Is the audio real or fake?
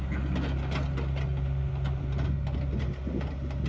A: real